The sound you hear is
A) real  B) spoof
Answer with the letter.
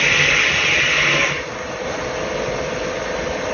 A